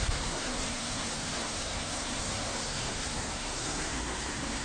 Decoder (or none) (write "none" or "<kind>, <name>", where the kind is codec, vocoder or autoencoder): codec, SNAC